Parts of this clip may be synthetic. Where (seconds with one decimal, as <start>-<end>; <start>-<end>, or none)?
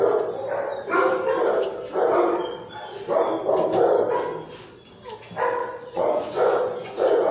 5.6-7.3